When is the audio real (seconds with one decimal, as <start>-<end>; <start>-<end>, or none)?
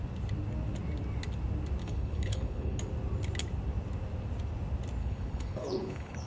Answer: 0.0-1.8; 2.8-5.0